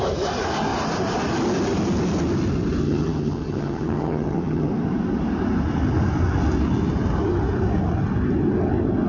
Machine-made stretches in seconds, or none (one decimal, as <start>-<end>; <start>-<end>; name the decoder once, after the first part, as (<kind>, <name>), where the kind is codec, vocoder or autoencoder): 2.8-4.7 (vocoder, HiFi-GAN)